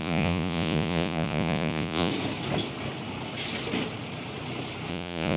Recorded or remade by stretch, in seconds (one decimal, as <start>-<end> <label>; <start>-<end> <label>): 0.0-2.1 remade; 2.1-4.9 recorded; 4.9-5.4 remade